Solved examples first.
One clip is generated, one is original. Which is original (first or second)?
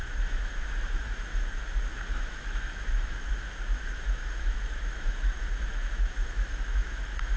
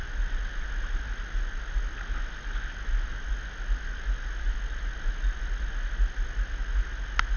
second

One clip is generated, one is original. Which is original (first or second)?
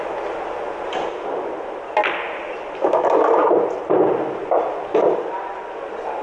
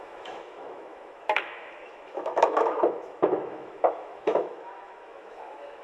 first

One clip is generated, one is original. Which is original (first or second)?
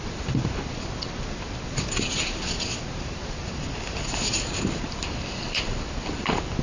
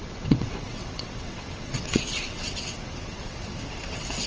first